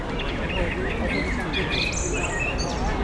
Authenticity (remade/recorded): recorded